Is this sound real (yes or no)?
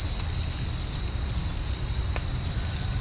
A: yes